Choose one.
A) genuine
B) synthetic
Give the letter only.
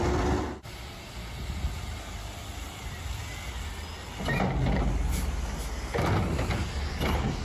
A